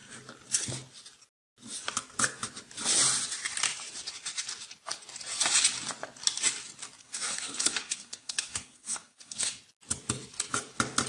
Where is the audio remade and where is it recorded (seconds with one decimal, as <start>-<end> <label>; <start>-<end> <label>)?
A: 0.0-7.0 recorded; 7.0-9.6 remade; 9.6-11.1 recorded